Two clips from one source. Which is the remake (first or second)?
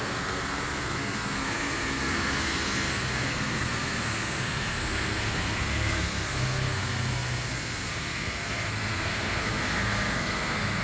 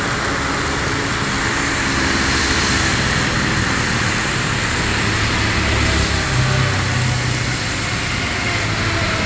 first